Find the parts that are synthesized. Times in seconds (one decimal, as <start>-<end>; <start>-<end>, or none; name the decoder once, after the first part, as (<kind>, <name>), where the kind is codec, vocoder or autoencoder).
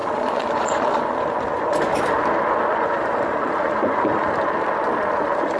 0.0-2.0 (vocoder, Vocos); 2.7-4.3